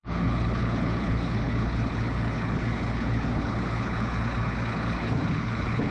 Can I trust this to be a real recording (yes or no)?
no